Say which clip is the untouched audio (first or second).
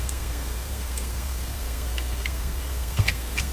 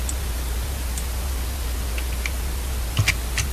second